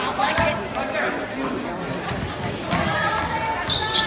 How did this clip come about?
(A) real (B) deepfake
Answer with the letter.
A